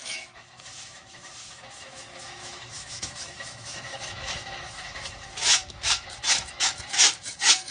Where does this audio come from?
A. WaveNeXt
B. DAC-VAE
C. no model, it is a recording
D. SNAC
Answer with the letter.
B